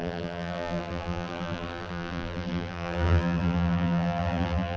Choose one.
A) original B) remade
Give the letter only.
B